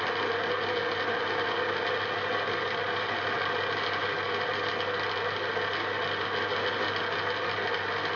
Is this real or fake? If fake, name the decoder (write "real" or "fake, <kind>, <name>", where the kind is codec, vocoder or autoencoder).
real